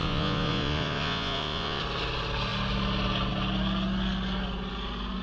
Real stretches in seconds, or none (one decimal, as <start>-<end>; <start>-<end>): 1.8-5.2